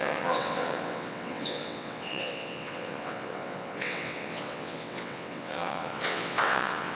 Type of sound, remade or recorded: remade